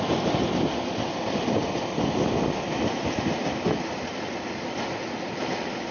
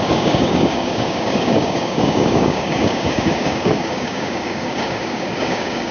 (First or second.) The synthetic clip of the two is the second